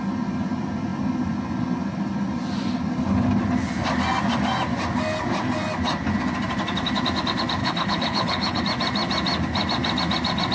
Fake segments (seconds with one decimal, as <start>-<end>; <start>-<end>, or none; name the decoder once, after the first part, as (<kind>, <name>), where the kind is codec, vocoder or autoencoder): 7.6-8.6 (codec, HILCodec)

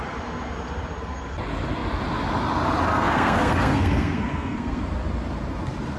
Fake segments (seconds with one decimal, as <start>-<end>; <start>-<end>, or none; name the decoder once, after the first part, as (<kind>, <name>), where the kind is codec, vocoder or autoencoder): 2.9-4.8 (codec, SNAC)

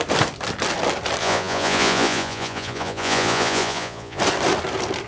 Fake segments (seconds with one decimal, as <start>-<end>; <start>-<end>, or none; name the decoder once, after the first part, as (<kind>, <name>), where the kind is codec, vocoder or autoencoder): 1.2-4.2 (vocoder, Vocos)

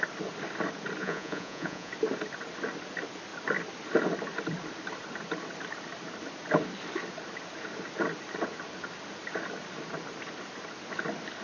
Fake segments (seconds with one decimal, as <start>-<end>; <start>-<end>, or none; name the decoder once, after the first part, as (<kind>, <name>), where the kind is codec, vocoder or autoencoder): 1.0-1.9 (vocoder, Vocos)

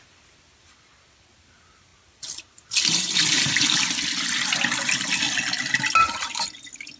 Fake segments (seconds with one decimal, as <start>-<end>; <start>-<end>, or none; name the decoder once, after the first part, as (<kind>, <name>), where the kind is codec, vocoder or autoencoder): none